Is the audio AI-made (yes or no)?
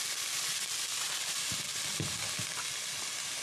no